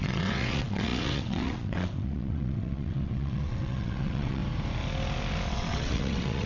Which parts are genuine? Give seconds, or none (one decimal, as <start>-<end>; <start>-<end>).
4.4-5.5